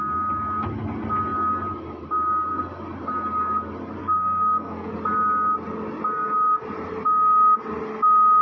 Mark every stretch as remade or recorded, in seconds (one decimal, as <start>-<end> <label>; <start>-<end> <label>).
0.0-4.0 recorded; 4.0-4.9 remade; 4.9-8.4 recorded

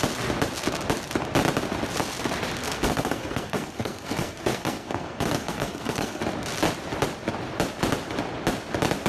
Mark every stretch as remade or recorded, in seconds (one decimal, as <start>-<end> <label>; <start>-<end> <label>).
0.0-2.6 recorded; 2.6-6.2 remade; 6.2-9.1 recorded

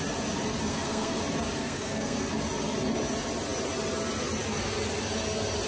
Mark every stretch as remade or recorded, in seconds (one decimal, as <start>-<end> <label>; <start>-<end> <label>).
0.0-0.7 recorded; 0.7-1.2 remade; 1.2-1.6 recorded; 1.6-2.3 remade; 2.3-5.7 recorded